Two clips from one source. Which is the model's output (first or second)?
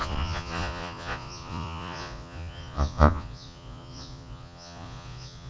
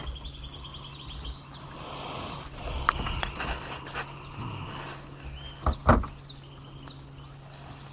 first